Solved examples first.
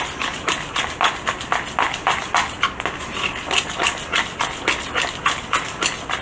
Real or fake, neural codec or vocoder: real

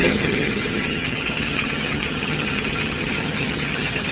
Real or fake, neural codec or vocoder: fake, vocoder, HiFi-GAN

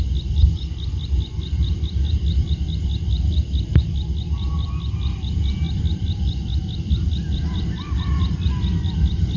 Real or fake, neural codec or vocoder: real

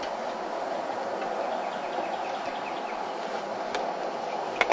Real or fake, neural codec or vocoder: real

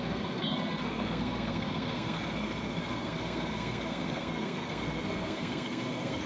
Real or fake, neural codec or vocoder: fake, codec, SNAC